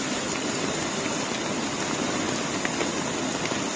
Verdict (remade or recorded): recorded